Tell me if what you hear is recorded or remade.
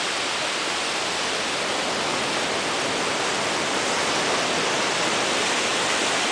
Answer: recorded